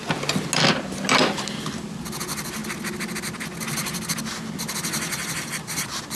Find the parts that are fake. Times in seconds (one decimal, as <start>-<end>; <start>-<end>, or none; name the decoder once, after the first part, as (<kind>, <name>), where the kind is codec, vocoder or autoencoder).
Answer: none